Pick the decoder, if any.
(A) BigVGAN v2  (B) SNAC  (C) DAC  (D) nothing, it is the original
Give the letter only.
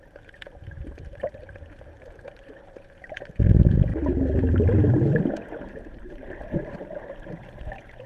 A